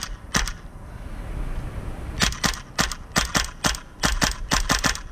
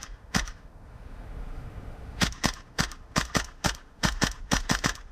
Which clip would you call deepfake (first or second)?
second